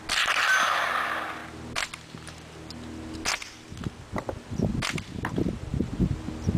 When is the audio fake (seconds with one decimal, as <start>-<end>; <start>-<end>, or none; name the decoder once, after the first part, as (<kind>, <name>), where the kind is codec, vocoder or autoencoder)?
none